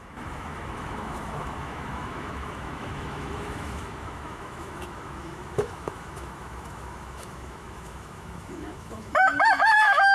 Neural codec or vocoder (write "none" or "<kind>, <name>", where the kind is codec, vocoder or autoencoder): autoencoder, DAC-VAE